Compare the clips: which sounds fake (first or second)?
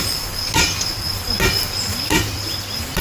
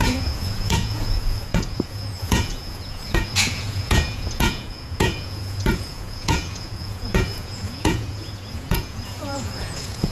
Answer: second